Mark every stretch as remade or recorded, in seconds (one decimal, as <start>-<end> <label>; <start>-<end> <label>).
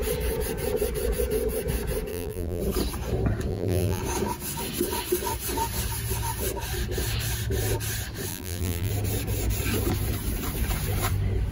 0.0-2.1 recorded; 2.1-2.6 remade; 2.6-3.5 recorded; 3.5-4.0 remade; 4.0-8.3 recorded; 8.3-8.9 remade; 8.9-11.5 recorded